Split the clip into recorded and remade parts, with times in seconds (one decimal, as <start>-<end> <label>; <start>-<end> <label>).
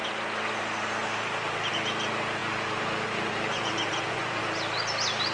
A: 0.0-2.4 recorded; 2.4-4.4 remade; 4.4-5.3 recorded